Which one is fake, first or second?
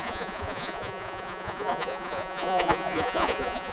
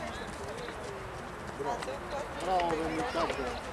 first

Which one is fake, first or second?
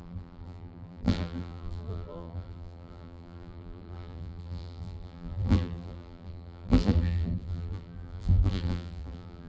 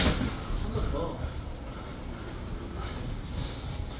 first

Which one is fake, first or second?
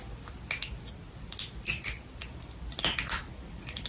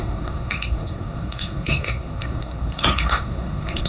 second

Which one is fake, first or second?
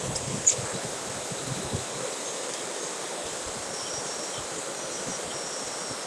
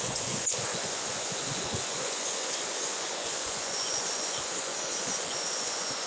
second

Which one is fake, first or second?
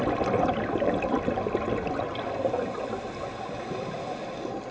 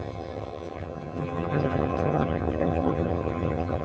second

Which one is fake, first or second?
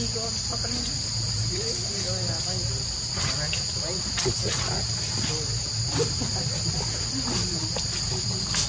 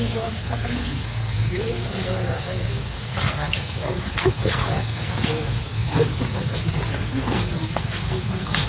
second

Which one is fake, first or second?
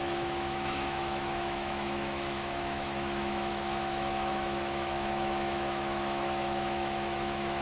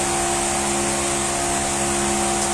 first